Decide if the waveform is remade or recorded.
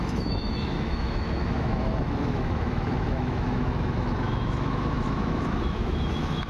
remade